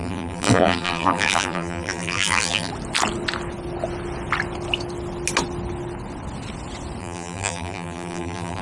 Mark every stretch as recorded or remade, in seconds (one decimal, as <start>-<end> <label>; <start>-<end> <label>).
0.0-2.7 remade; 2.7-7.0 recorded; 7.0-8.6 remade